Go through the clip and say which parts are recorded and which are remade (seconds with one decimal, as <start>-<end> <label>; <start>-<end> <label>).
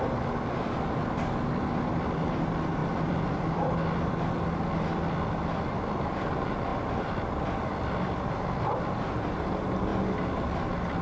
0.0-2.8 recorded; 2.8-4.1 remade; 4.1-11.0 recorded